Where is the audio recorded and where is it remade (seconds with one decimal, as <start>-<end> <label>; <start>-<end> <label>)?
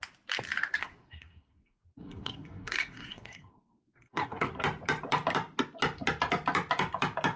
0.0-0.8 recorded; 0.8-4.5 remade; 4.5-7.4 recorded